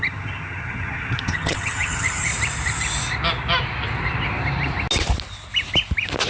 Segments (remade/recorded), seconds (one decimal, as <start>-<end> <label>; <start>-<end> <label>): 0.0-2.3 remade; 2.3-6.3 recorded